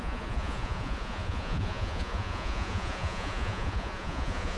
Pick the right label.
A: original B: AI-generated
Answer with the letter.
B